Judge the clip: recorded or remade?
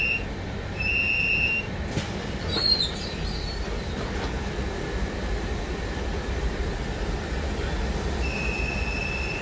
remade